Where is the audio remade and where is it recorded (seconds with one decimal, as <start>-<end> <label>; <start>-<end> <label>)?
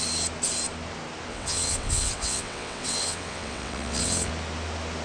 0.0-1.3 recorded; 1.3-4.3 remade; 4.3-5.0 recorded